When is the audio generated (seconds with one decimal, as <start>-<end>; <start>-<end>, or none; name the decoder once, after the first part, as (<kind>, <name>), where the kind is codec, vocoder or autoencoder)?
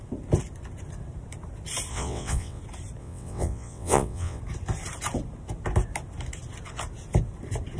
1.9-2.6 (vocoder, WaveNeXt); 3.0-4.4